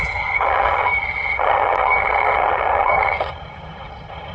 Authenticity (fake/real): fake